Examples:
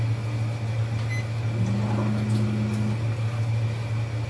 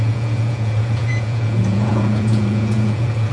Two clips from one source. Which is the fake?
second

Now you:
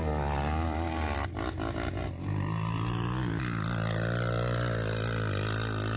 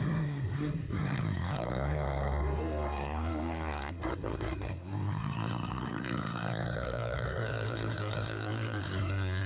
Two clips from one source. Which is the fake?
second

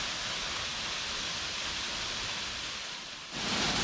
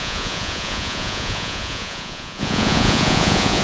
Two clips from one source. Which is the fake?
second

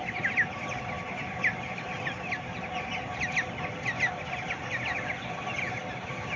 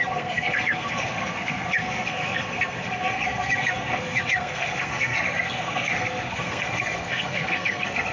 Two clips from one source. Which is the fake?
second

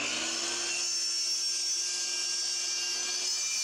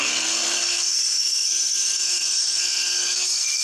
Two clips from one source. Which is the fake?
second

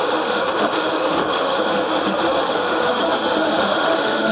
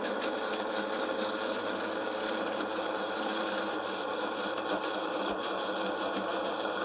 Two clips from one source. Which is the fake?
first